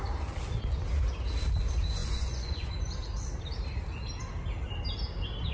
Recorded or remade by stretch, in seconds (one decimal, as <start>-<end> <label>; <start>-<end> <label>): 0.0-2.0 recorded; 2.0-2.7 remade; 2.7-5.5 recorded